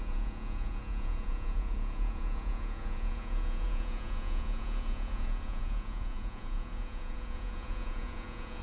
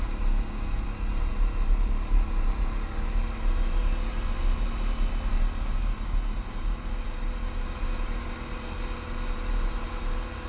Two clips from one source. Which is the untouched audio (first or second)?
second